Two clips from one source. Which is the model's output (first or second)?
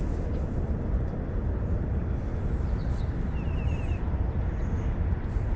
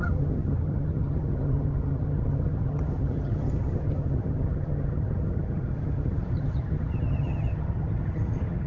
second